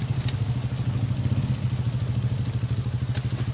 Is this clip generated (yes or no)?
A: no